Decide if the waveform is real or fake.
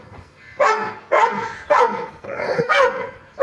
fake